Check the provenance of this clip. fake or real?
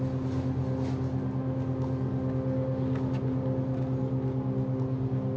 real